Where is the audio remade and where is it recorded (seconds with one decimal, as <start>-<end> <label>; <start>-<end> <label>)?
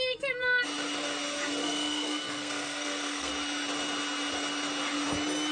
0.0-1.6 recorded; 1.6-3.3 remade; 3.3-5.5 recorded